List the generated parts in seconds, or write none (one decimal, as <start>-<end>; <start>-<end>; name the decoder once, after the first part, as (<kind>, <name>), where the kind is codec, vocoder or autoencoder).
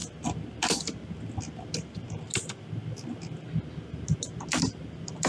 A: none